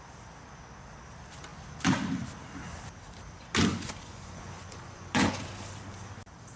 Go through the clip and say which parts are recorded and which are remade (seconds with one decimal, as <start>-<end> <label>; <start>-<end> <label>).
0.0-3.7 recorded; 3.7-5.4 remade; 5.4-6.6 recorded

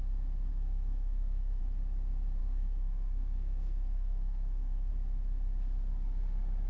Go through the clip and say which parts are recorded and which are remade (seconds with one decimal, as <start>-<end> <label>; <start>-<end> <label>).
0.0-0.5 recorded; 0.5-1.6 remade; 1.6-2.4 recorded; 2.4-4.9 remade; 4.9-6.7 recorded

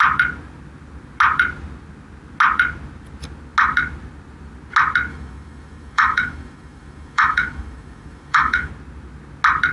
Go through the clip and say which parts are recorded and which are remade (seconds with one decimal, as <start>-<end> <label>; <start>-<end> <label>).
0.0-5.1 recorded; 5.1-8.7 remade; 8.7-9.7 recorded

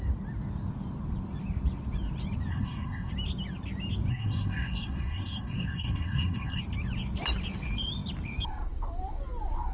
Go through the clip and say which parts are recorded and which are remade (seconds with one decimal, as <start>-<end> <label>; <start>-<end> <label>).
0.0-2.5 recorded; 2.5-3.1 remade; 3.1-4.1 recorded; 4.1-6.6 remade; 6.6-9.7 recorded